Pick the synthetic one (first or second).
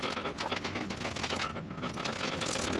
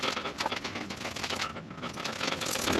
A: second